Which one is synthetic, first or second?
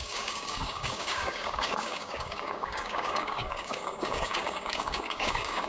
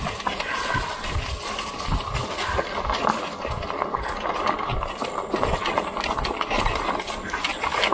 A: first